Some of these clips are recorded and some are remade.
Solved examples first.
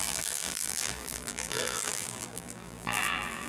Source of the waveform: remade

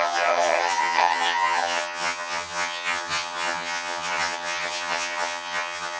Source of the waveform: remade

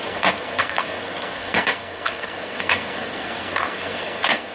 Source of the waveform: remade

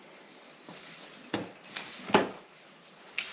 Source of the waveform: recorded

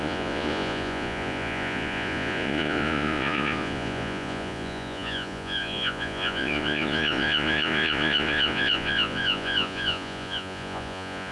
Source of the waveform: remade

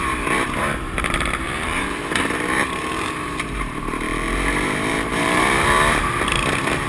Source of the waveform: remade